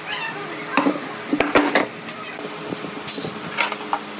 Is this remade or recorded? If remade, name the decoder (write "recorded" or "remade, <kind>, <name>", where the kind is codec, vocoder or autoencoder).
recorded